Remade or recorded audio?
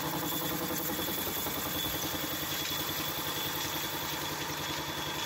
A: recorded